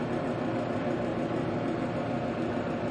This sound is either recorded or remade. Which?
recorded